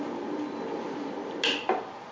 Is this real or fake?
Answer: real